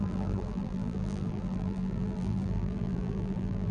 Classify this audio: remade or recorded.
remade